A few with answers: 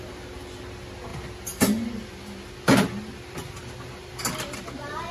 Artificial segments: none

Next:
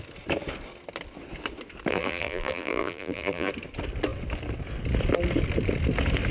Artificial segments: 1.9-3.5 (vocoder, BigVGAN v2)

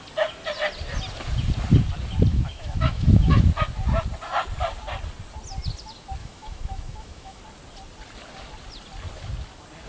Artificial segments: 2.3-3.4 (autoencoder, DAC-VAE); 6.2-7.4

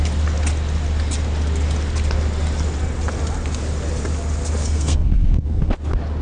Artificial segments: 4.6-5.7 (codec, SNAC)

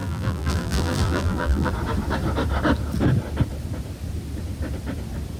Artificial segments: 0.0-1.7 (vocoder, BigVGAN v2)

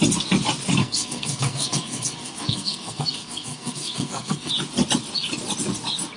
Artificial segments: 0.8-4.5 (codec, SNAC)

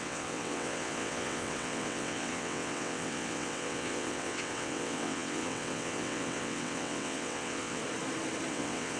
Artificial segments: 0.0-7.8 (vocoder, WaveNeXt); 8.5-9.0